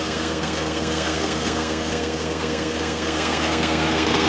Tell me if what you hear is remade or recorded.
remade